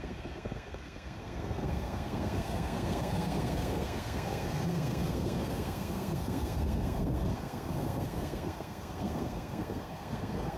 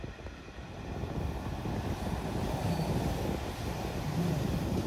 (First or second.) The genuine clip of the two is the second